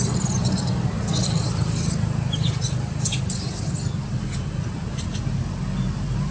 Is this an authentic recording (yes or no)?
yes